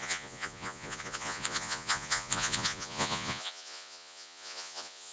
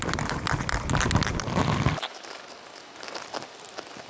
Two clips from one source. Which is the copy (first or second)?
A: first